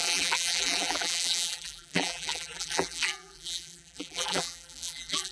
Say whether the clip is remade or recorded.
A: remade